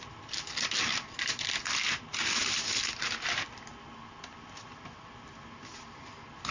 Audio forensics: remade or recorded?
recorded